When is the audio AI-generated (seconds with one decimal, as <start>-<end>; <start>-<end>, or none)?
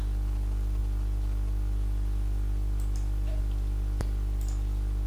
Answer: none